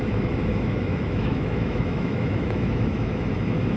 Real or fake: fake